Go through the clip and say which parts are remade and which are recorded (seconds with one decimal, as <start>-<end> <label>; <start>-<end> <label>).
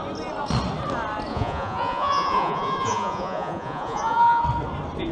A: 0.0-1.3 recorded; 1.3-4.4 remade; 4.4-5.1 recorded